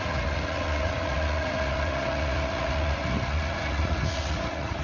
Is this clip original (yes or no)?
no